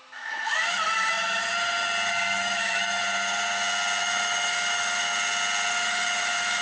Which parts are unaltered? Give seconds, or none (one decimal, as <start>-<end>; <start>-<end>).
1.4-2.1; 3.0-4.0; 5.1-5.7